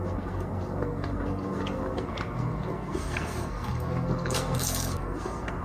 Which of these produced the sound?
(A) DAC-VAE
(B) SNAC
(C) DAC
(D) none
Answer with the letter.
B